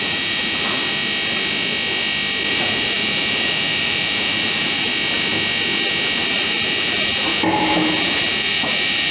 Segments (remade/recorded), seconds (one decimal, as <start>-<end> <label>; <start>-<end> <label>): 0.0-0.8 remade; 0.8-2.5 recorded; 2.5-4.9 remade; 4.9-6.2 recorded; 6.2-7.3 remade; 7.3-8.0 recorded; 8.0-9.1 remade